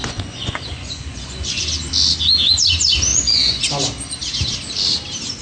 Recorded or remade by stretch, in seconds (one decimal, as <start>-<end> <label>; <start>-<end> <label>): 0.0-1.6 remade; 1.6-3.1 recorded; 3.1-3.6 remade; 3.6-5.4 recorded

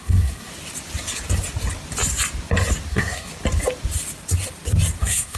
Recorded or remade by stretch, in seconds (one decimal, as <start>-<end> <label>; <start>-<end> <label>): 0.0-0.5 remade; 0.5-2.9 recorded; 2.9-3.3 remade; 3.3-5.0 recorded; 5.0-5.4 remade

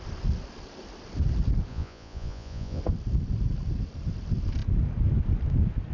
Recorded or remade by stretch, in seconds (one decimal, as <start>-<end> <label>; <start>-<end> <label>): 0.0-1.7 recorded; 1.7-2.8 remade; 2.8-5.9 recorded

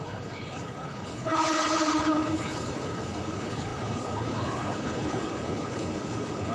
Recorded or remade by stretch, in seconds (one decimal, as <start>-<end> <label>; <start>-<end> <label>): 0.0-6.5 remade

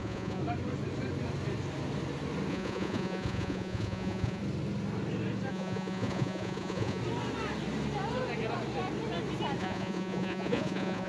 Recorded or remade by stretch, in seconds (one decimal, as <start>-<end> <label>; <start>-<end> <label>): 0.0-0.4 remade; 0.4-2.5 recorded; 2.5-4.4 remade; 4.4-5.5 recorded; 5.5-7.0 remade; 7.0-9.6 recorded; 9.6-11.1 remade

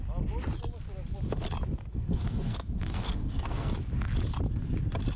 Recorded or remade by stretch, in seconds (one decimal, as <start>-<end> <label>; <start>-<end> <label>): 0.0-1.9 recorded; 1.9-3.7 remade; 3.7-5.2 recorded

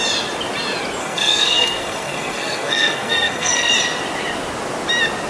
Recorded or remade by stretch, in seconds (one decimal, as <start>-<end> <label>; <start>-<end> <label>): 0.0-1.0 recorded; 1.0-3.7 remade; 3.7-5.3 recorded